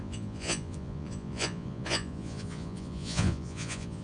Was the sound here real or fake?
fake